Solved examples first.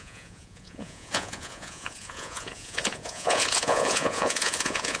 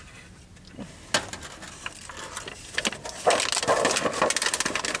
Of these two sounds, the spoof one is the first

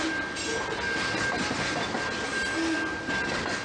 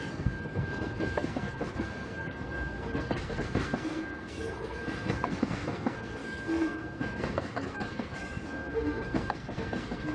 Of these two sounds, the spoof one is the second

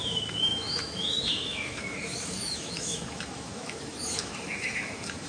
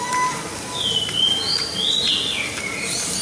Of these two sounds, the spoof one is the first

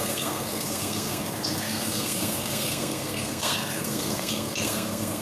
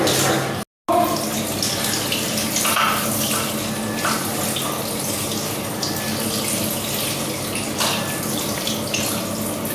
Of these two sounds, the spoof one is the first